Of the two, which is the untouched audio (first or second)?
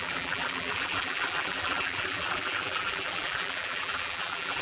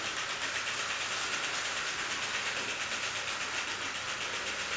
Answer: second